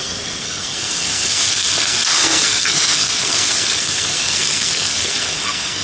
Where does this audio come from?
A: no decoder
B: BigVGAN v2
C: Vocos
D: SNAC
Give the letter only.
D